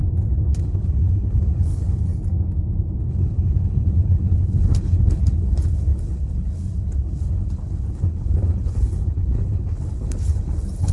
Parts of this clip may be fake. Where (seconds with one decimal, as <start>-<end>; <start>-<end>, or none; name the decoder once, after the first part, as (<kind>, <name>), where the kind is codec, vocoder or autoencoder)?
0.6-2.1 (codec, HILCodec); 3.1-10.9